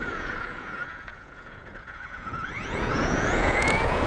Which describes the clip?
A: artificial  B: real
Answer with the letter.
A